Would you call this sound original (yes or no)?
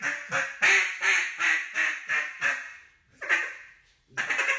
yes